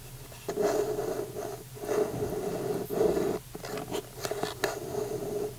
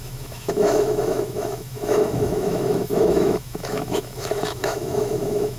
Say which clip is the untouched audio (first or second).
first